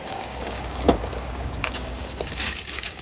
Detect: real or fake fake